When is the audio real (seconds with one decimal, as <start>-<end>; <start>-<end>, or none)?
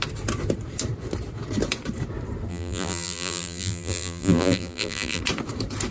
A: 0.0-2.5; 5.2-5.9